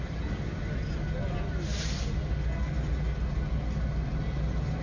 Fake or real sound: real